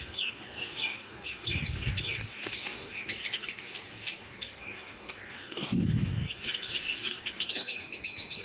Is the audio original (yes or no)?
no